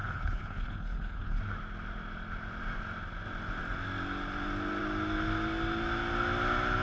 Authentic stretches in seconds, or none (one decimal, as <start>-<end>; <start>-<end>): 1.4-6.8